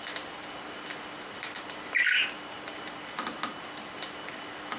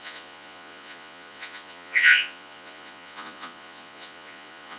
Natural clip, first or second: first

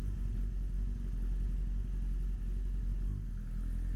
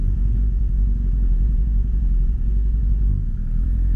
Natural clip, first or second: first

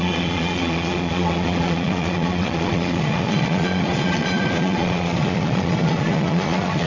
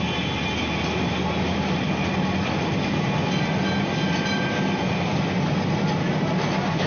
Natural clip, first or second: second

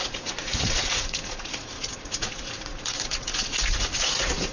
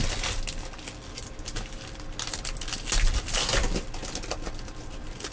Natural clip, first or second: second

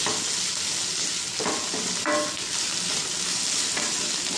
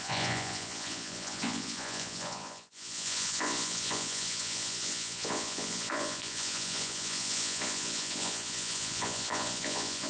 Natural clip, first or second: first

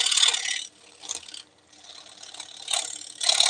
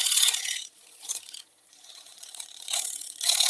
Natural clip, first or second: first